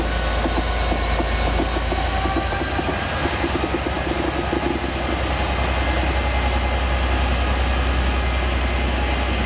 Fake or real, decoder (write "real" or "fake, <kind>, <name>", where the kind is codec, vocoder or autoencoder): real